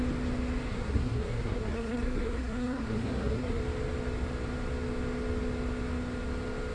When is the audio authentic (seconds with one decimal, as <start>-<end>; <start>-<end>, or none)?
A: 0.0-0.7; 3.6-6.7